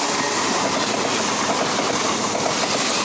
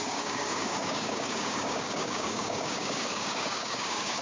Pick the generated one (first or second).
second